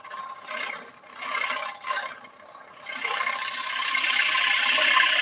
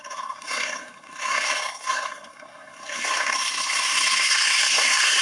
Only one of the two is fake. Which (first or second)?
second